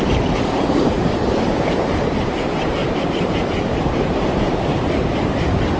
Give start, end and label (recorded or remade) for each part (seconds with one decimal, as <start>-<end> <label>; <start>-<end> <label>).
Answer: 0.0-5.8 remade